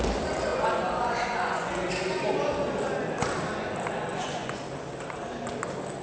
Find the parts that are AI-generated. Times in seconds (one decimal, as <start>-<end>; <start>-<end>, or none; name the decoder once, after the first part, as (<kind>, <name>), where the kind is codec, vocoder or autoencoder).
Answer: 0.5-1.9 (vocoder, Vocos); 4.1-4.6